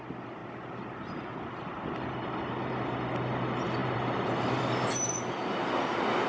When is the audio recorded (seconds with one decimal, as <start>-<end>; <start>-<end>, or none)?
0.0-3.8; 4.6-6.3